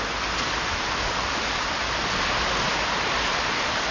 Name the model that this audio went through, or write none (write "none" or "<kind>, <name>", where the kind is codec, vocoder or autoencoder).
none